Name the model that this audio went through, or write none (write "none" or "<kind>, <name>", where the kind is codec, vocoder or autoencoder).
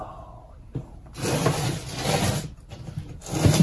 none